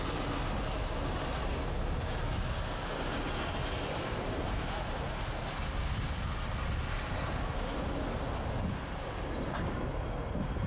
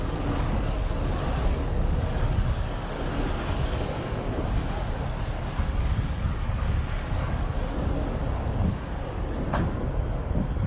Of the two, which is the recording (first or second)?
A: first